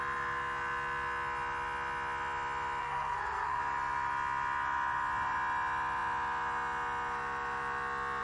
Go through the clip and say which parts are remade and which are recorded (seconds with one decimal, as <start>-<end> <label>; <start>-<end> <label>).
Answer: 0.0-2.8 recorded; 2.8-3.6 remade; 3.6-8.2 recorded